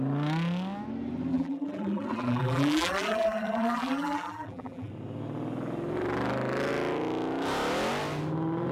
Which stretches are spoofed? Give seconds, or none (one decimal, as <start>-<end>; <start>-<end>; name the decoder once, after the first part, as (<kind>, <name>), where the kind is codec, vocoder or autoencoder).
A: 1.3-4.9 (vocoder, BigVGAN v2)